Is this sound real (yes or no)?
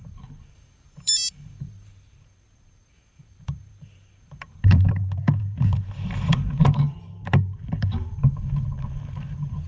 no